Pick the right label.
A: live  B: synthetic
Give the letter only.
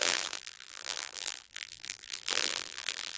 B